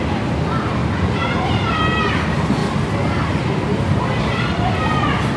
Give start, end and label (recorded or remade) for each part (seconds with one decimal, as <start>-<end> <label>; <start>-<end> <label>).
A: 0.0-0.8 recorded; 0.8-1.8 remade; 1.8-5.4 recorded